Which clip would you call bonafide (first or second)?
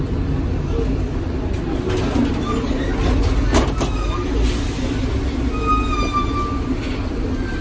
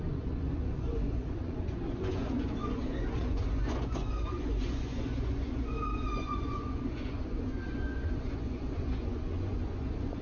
first